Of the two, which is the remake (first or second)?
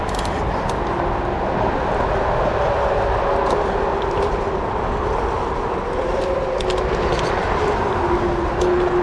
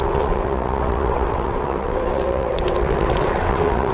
second